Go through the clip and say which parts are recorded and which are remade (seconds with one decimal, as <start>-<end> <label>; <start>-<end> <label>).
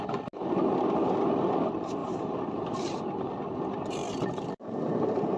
0.0-2.0 recorded; 2.0-3.0 remade; 3.0-5.4 recorded